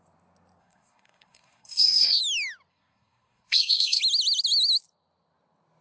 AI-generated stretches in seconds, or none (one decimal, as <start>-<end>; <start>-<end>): 0.6-2.2; 2.7-4.0